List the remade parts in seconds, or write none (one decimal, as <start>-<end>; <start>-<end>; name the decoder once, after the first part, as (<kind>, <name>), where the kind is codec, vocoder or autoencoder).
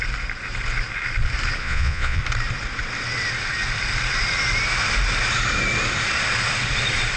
1.6-2.2 (vocoder, Vocos)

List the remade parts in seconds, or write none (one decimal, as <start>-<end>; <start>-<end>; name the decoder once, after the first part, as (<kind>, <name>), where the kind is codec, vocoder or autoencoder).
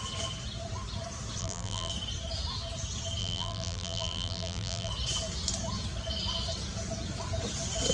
1.4-1.9 (vocoder, BigVGAN v2); 3.2-4.9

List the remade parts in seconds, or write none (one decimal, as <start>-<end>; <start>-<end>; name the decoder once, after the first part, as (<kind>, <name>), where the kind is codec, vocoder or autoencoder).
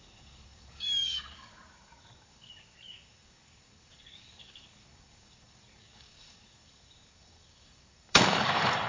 0.0-8.9 (codec, DAC)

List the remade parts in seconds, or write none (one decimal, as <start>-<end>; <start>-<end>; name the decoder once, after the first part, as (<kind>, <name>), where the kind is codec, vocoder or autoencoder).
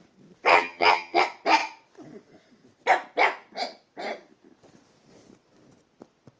0.5-1.2 (vocoder, HiFi-GAN)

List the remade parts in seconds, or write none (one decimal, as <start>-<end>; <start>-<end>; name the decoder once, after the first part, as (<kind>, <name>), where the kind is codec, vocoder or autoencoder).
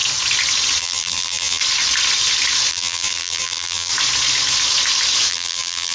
0.8-1.6 (vocoder, BigVGAN v2); 2.7-3.9; 5.3-5.9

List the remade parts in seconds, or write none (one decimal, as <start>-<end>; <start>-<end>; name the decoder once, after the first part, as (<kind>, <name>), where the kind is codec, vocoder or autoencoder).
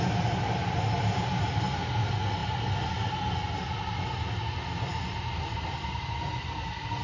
none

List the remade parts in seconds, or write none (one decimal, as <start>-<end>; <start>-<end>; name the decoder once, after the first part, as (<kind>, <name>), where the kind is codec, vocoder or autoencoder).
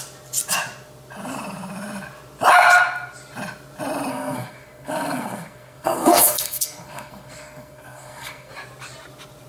4.1-8.5 (codec, SNAC)